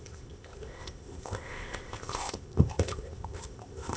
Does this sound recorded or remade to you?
remade